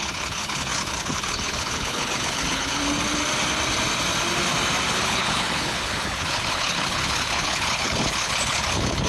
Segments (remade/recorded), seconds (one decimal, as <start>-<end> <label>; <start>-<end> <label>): 0.0-2.8 remade; 2.8-4.9 recorded; 4.9-9.1 remade